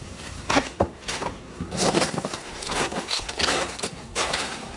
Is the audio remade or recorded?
remade